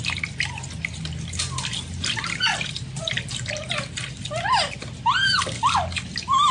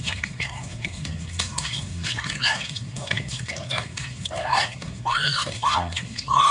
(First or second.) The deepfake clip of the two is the second